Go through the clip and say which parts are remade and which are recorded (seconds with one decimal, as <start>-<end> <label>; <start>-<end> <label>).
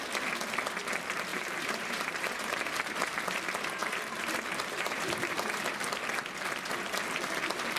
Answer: 0.0-1.3 recorded; 1.3-2.7 remade; 2.7-3.8 recorded; 3.8-6.0 remade; 6.0-7.8 recorded